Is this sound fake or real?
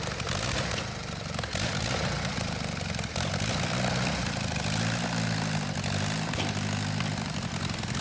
fake